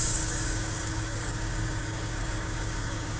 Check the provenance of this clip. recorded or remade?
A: remade